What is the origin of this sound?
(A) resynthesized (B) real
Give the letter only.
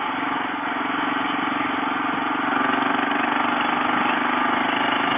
B